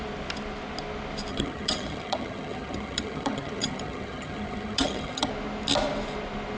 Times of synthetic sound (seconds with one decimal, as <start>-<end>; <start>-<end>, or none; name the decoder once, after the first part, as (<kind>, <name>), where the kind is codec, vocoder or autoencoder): 1.3-5.3 (vocoder, HiFi-GAN)